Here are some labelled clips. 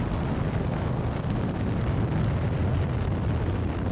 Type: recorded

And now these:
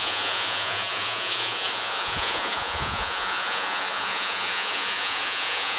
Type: remade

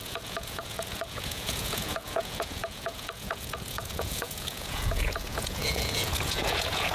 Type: remade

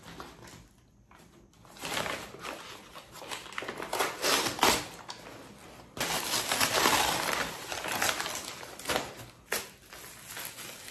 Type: recorded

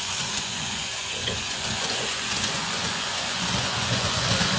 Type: remade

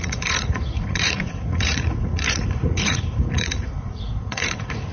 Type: remade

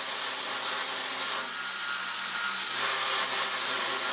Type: recorded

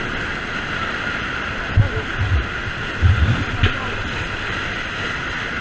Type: recorded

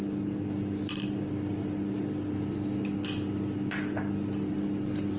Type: recorded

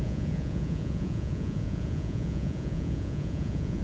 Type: remade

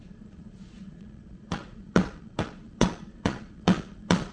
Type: remade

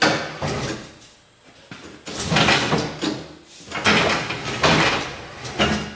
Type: recorded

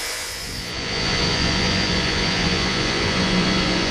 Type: remade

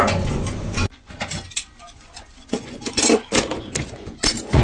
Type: remade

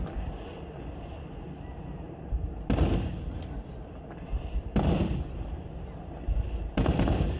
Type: recorded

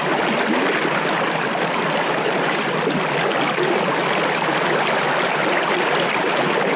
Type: recorded